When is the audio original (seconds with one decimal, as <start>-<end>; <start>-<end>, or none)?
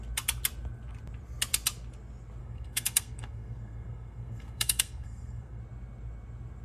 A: 0.0-2.4; 5.6-6.6